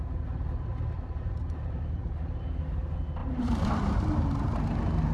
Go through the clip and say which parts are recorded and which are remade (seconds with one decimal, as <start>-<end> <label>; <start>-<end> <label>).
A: 0.0-3.2 recorded; 3.2-4.1 remade; 4.1-5.1 recorded